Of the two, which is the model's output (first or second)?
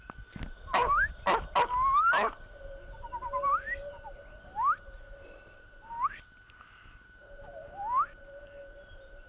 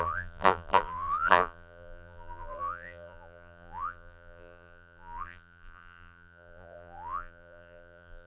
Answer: second